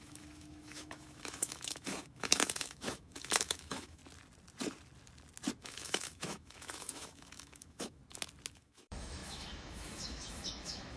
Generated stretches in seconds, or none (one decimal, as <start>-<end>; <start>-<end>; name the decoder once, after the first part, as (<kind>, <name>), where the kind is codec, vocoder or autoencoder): 0.0-4.0 (autoencoder, DAC-VAE); 5.6-8.0; 8.5-11.0

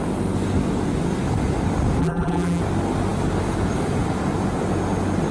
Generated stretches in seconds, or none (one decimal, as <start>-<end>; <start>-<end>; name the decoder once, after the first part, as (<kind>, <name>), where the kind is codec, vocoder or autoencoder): 2.0-2.6 (vocoder, BigVGAN v2)

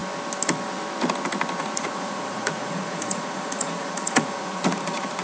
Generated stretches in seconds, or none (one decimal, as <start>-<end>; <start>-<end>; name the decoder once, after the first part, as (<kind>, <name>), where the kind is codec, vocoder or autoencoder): 1.6-5.2 (vocoder, Vocos)